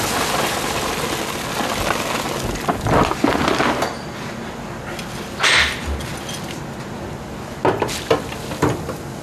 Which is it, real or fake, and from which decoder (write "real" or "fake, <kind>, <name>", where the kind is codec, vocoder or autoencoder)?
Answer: real